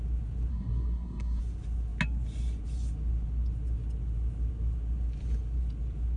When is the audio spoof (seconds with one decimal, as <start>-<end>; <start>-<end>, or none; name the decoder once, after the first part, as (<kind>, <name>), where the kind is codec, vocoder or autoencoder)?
0.5-1.4 (codec, SNAC)